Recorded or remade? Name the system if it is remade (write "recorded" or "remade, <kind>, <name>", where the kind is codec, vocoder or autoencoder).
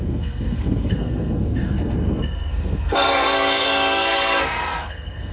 remade, codec, SNAC